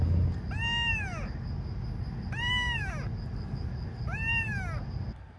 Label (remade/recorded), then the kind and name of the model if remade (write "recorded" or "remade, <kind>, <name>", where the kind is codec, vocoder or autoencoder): recorded